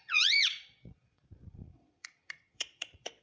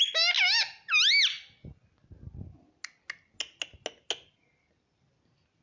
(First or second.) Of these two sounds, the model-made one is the first